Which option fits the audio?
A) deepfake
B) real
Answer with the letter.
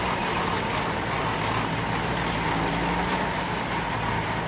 B